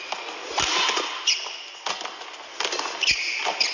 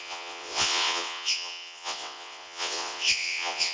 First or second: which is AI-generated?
second